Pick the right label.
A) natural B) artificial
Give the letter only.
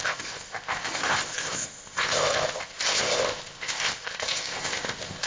B